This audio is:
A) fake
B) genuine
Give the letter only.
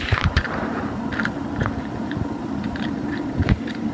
A